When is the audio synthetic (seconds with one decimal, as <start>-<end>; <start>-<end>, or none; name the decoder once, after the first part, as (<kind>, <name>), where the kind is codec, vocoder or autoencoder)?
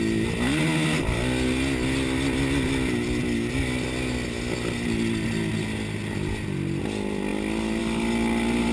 none